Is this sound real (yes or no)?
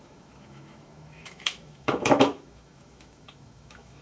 no